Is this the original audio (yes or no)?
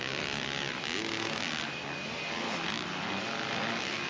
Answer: yes